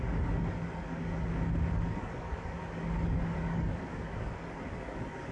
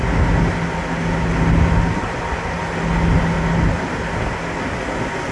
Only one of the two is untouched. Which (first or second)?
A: second